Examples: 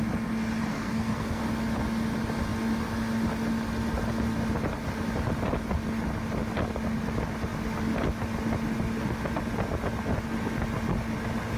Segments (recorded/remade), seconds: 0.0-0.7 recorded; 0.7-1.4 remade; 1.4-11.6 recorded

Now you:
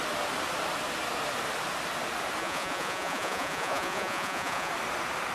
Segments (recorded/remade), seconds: 0.0-2.4 recorded; 2.4-4.7 remade; 4.7-5.3 recorded

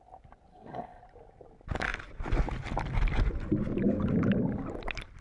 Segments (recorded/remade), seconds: 0.0-0.5 recorded; 0.5-1.0 remade; 1.0-5.2 recorded

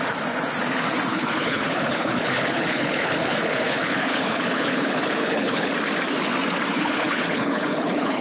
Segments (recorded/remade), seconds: 0.0-1.1 recorded; 1.1-5.7 remade; 5.7-6.7 recorded; 6.7-8.2 remade

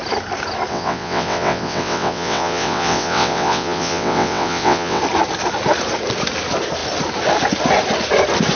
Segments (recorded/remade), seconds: 0.0-0.7 recorded; 0.7-5.0 remade; 5.0-8.6 recorded